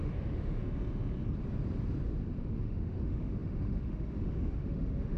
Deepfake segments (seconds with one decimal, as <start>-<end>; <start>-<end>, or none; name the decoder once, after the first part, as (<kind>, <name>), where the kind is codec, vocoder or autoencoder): 0.0-0.6 (autoencoder, DAC-VAE); 2.6-5.2